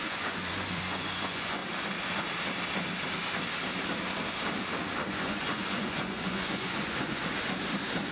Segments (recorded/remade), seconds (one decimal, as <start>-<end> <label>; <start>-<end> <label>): 0.0-1.6 remade; 1.6-5.1 recorded; 5.1-7.2 remade; 7.2-8.1 recorded